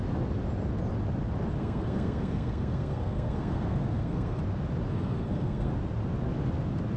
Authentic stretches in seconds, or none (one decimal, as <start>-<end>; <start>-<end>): 0.0-1.6; 4.4-4.9; 5.7-7.0